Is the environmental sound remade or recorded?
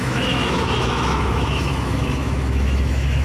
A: remade